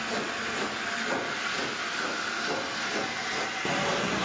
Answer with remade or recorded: recorded